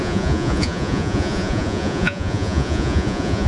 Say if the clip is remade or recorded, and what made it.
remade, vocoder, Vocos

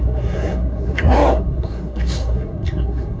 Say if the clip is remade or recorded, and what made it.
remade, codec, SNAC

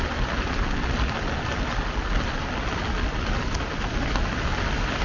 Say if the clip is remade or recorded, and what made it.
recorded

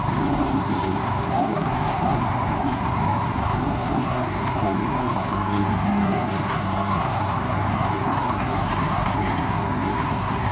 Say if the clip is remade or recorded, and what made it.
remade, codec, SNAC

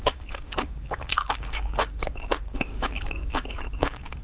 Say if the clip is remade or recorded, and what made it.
remade, codec, DAC